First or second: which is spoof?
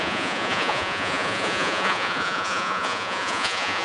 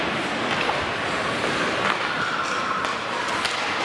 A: first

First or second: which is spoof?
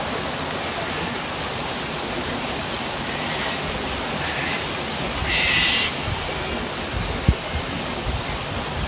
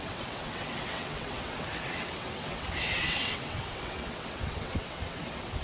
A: second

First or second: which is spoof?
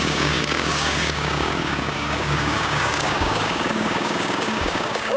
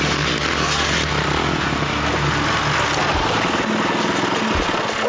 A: first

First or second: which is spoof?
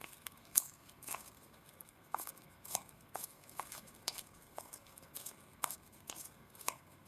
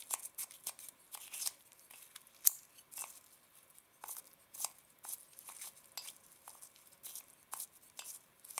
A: first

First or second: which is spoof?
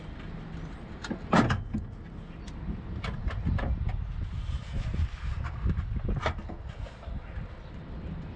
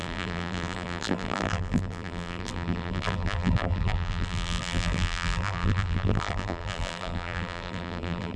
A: second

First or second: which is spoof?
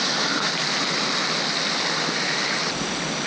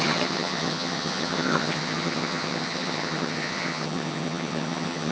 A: second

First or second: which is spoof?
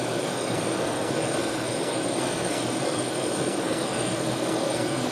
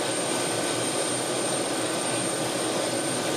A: first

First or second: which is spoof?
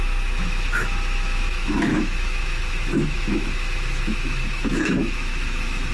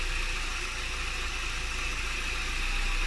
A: first